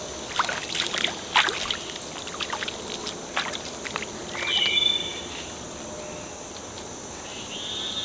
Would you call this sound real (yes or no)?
yes